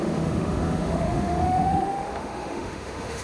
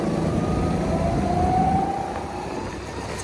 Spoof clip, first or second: first